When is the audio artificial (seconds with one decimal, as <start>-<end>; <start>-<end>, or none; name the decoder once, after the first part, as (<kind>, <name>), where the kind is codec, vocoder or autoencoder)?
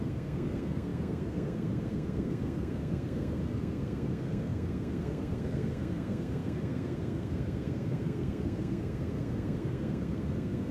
0.0-10.7 (codec, SNAC)